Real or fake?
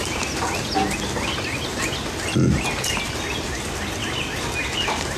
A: real